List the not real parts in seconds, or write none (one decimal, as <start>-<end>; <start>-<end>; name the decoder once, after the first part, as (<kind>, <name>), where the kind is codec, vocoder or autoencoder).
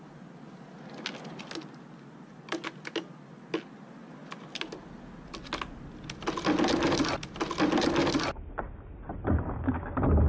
none